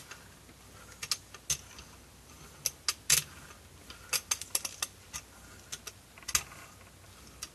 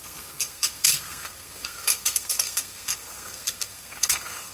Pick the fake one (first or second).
second